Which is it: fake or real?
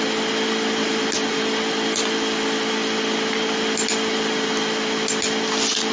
real